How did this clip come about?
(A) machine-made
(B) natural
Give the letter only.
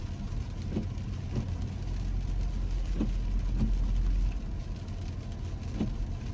B